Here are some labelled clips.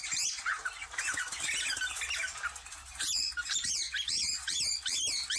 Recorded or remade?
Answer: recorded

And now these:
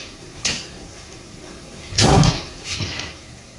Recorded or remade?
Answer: remade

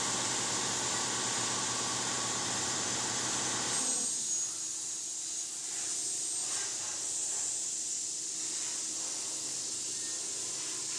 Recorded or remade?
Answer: recorded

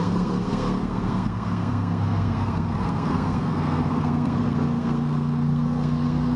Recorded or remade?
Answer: remade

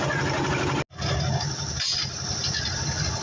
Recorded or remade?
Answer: recorded